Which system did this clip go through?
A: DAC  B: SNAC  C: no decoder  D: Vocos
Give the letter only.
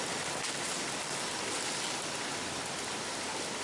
C